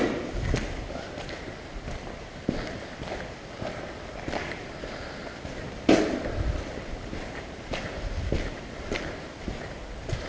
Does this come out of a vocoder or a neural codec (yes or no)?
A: no